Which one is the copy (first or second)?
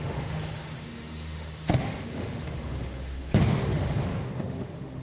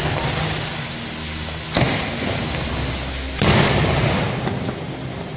first